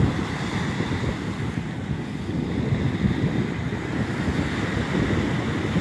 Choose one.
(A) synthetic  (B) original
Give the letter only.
B